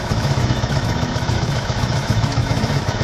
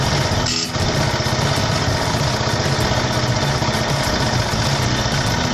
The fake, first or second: first